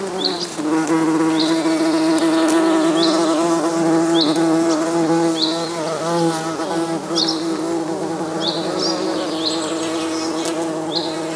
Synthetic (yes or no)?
no